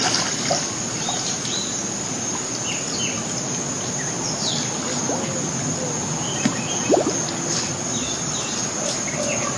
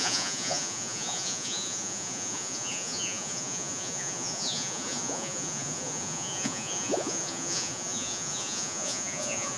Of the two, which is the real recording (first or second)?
first